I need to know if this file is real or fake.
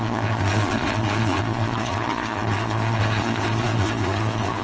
fake